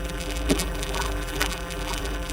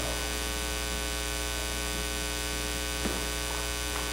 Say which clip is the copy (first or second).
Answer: first